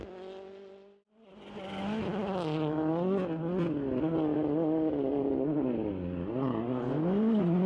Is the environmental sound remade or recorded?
recorded